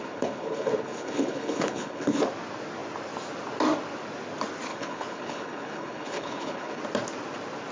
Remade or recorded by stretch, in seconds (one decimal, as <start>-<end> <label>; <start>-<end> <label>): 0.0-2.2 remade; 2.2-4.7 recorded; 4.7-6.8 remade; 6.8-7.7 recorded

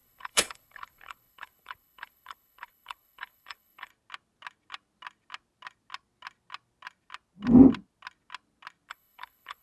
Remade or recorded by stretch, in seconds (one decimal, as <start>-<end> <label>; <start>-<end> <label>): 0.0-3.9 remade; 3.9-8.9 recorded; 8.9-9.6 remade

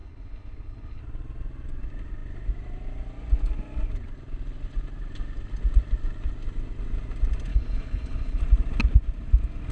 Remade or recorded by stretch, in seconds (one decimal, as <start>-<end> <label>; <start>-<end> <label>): 0.0-1.0 remade; 1.0-7.5 recorded; 7.5-8.4 remade; 8.4-9.7 recorded

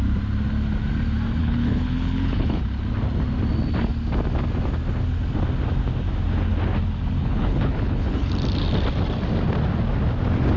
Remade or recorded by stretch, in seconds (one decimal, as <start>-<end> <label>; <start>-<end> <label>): 0.0-1.4 recorded; 1.4-2.6 remade; 2.6-7.2 recorded; 7.2-8.3 remade; 8.3-10.6 recorded